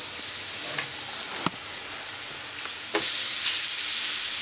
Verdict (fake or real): real